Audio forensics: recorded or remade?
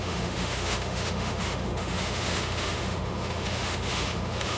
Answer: remade